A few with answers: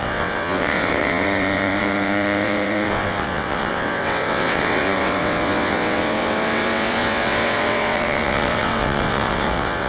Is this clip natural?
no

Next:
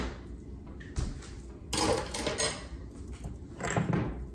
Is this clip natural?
yes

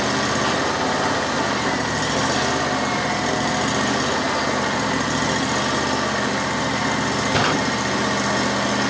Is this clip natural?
yes